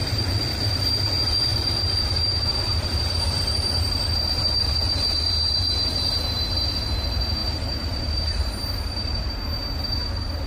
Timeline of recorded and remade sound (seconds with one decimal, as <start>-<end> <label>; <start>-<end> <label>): 0.0-0.9 remade; 0.9-1.5 recorded; 1.5-6.4 remade; 6.4-7.4 recorded; 7.4-8.0 remade; 8.0-10.5 recorded

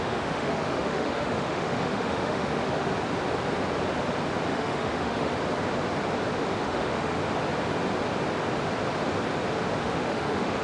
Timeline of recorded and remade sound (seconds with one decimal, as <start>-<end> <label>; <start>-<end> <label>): 0.0-2.9 remade; 2.9-4.5 recorded; 4.5-5.3 remade; 5.3-6.6 recorded; 6.6-7.2 remade; 7.2-9.8 recorded; 9.8-10.6 remade

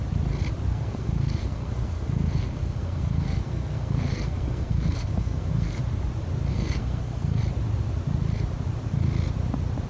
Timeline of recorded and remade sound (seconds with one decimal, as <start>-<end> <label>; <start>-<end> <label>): 0.0-0.7 recorded; 0.7-5.8 remade; 5.8-6.5 recorded; 6.5-7.4 remade; 7.4-9.9 recorded

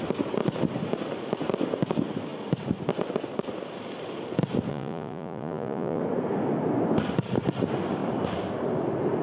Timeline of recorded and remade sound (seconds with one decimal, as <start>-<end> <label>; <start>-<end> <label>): 0.0-4.7 recorded; 4.7-6.0 remade; 6.0-9.2 recorded

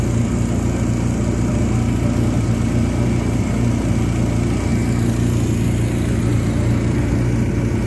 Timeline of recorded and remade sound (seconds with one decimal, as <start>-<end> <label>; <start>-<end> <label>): 0.0-7.9 recorded

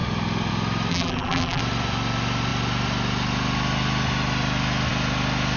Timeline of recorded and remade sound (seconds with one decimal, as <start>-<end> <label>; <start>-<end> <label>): 0.0-0.9 recorded; 0.9-1.6 remade; 1.6-5.6 recorded

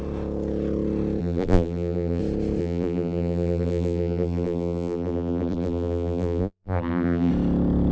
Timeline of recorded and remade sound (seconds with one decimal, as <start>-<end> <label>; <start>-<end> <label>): 0.0-1.2 recorded; 1.2-2.2 remade; 2.2-2.6 recorded; 2.6-7.3 remade; 7.3-7.9 recorded